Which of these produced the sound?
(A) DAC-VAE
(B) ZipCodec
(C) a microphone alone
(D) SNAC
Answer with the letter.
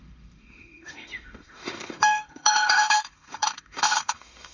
A